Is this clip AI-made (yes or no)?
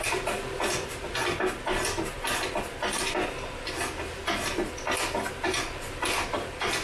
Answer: no